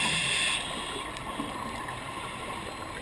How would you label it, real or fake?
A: real